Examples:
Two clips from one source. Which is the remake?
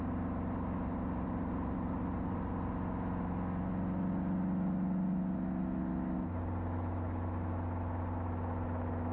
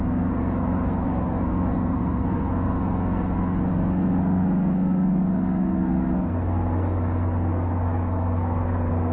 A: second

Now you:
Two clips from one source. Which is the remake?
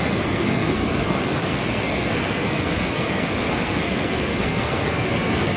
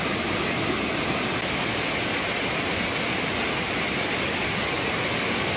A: first